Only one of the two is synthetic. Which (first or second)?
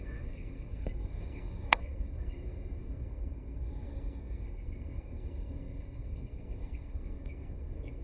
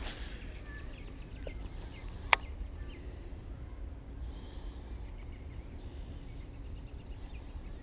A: first